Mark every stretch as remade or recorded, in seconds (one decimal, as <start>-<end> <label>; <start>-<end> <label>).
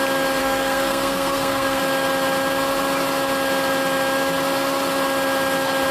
0.0-0.4 recorded; 0.4-1.8 remade; 1.8-5.9 recorded